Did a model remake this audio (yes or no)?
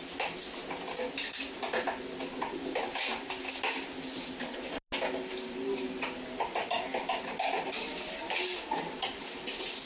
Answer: no